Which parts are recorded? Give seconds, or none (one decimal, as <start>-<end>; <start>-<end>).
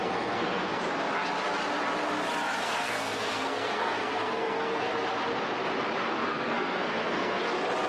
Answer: 0.8-2.6; 4.9-6.2; 7.4-7.9